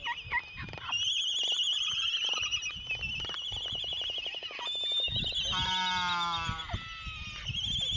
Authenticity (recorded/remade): recorded